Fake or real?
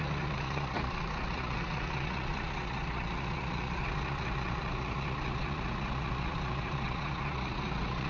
fake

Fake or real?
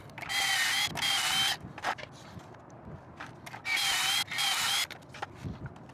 real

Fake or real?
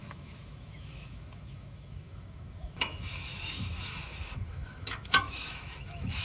fake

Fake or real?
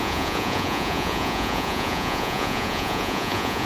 fake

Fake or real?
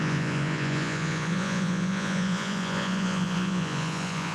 fake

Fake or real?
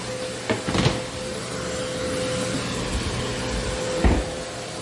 real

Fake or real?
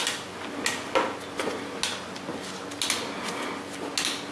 real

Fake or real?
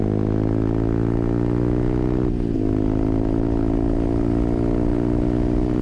real